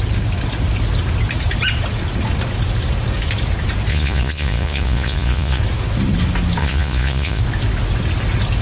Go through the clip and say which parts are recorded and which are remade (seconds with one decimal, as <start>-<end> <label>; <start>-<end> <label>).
0.0-3.9 recorded; 3.9-5.6 remade; 5.6-6.6 recorded; 6.6-7.4 remade; 7.4-8.6 recorded